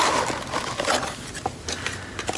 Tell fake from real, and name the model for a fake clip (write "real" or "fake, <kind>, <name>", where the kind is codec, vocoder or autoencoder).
real